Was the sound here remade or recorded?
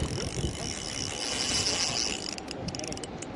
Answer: recorded